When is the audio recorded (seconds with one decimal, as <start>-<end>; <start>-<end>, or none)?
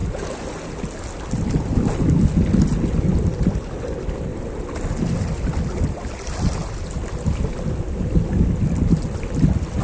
0.0-9.8